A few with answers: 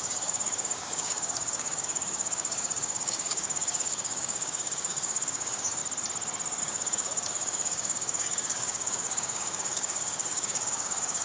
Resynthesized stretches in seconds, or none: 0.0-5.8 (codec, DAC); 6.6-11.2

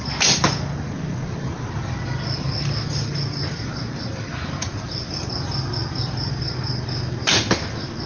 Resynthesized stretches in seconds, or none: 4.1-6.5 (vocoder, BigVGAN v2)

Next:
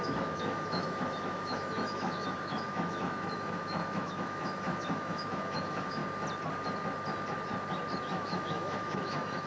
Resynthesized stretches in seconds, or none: 0.0-6.0 (autoencoder, DAC-VAE); 8.0-9.5